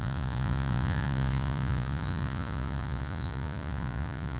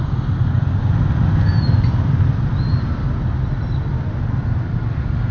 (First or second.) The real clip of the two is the second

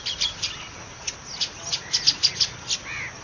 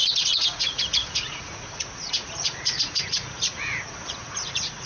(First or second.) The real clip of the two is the first